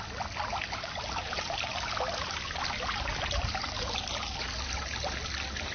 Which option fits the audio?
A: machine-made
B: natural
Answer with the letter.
B